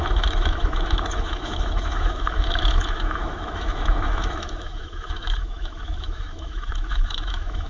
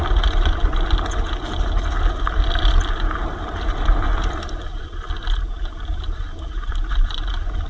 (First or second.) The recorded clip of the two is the second